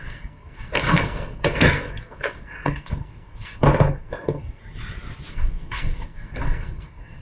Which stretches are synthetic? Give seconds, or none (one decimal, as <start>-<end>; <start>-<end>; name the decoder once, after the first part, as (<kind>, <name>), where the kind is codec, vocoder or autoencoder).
0.0-4.6 (codec, SNAC); 5.3-7.2